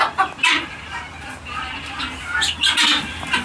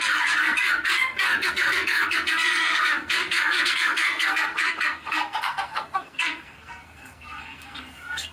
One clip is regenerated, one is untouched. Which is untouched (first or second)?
first